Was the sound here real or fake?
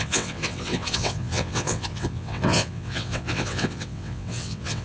fake